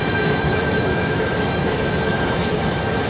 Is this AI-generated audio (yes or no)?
yes